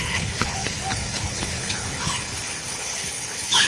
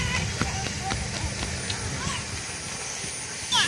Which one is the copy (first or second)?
first